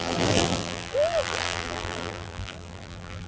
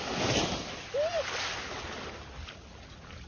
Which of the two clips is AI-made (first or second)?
first